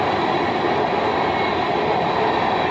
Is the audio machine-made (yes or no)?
no